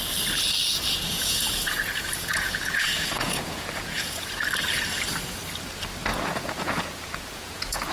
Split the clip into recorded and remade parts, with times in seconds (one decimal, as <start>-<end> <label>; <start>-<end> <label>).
0.0-0.6 recorded; 0.6-4.4 remade; 4.4-6.1 recorded; 6.1-7.9 remade